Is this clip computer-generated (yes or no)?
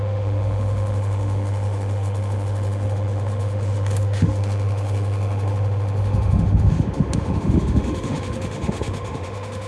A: yes